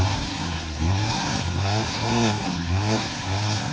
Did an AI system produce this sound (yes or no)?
yes